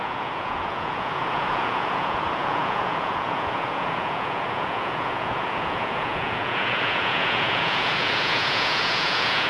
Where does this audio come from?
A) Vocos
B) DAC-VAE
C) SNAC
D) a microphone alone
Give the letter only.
A